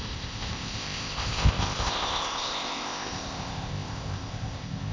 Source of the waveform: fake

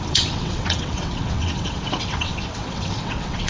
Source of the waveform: fake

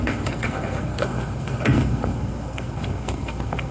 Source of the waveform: fake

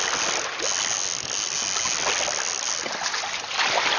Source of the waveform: real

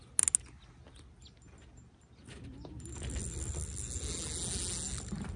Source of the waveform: real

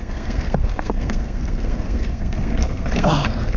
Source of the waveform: fake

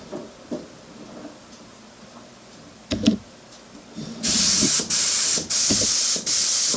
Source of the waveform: real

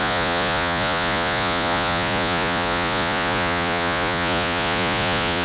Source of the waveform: fake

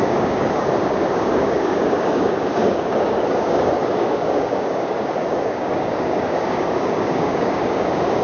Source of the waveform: fake